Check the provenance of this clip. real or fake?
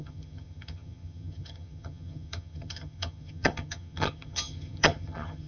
fake